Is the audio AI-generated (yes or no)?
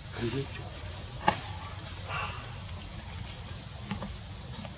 no